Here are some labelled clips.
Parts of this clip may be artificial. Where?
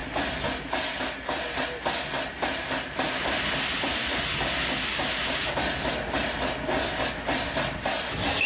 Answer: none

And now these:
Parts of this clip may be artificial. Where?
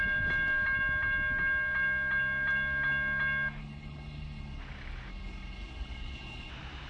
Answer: 3.6-4.6 (codec, HILCodec); 5.1-6.5